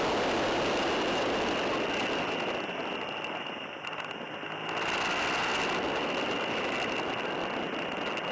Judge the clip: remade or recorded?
recorded